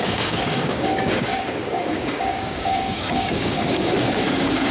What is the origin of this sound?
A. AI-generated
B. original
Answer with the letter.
A